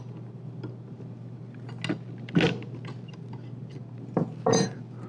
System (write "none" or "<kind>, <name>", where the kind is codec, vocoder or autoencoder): none